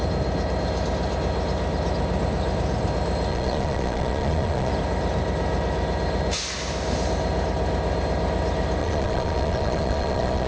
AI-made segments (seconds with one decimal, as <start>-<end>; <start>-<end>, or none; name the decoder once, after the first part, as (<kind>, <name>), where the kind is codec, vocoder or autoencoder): 3.3-4.7 (vocoder, Vocos); 8.8-10.5